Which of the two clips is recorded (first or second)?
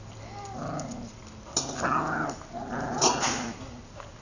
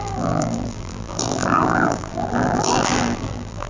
first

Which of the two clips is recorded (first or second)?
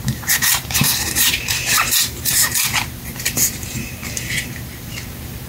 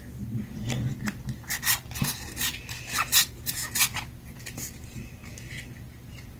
second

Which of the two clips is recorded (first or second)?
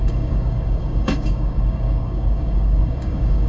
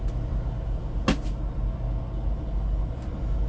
second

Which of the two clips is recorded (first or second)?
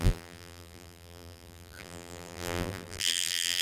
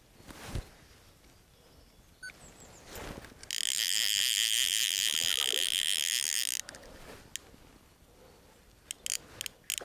second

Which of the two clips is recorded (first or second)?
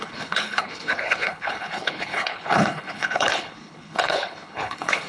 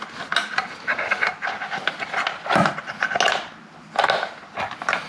second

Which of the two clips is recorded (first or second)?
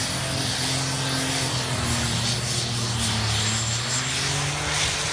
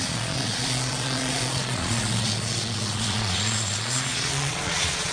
first